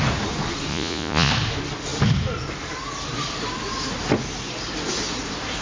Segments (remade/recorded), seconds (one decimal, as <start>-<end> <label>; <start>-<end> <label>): 0.0-0.7 recorded; 0.7-1.3 remade; 1.3-5.6 recorded